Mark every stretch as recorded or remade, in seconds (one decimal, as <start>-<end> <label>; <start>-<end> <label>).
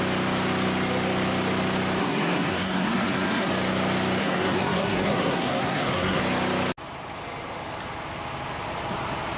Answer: 0.0-2.0 recorded; 2.0-3.5 remade; 3.5-4.2 recorded; 4.2-6.2 remade; 6.2-9.4 recorded